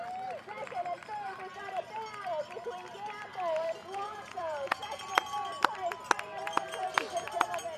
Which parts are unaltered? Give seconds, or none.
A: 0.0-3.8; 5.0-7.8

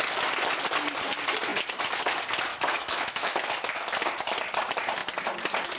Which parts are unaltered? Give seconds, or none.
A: 0.0-2.5; 4.0-5.8

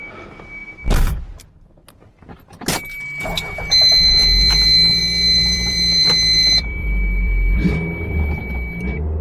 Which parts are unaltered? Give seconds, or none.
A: 0.0-3.2; 8.4-9.2